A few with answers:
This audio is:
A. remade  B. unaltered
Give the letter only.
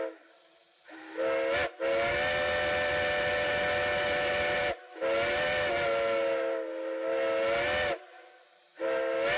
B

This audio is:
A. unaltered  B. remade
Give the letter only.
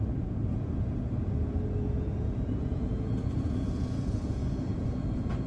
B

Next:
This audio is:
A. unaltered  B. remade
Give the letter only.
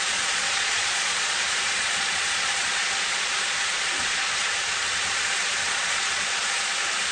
B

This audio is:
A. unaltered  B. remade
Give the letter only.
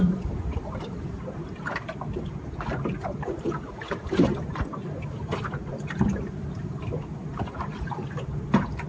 B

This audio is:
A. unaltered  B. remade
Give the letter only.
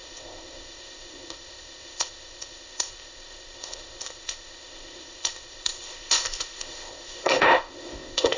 B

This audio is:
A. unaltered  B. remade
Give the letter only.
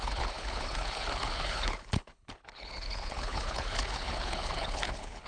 B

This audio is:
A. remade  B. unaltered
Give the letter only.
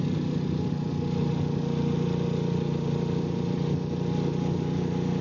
B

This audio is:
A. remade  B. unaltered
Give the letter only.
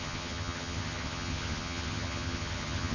A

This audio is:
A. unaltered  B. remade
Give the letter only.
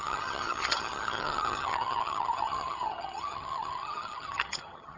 B